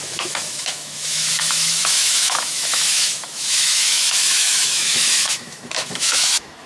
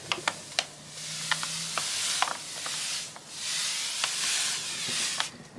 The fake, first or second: first